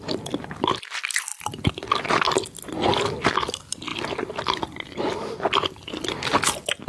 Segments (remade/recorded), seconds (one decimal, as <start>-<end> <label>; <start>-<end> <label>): 0.0-6.9 recorded